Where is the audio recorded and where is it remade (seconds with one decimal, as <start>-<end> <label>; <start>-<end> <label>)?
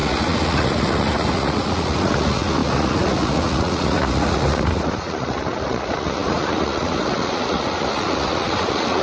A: 0.0-9.0 remade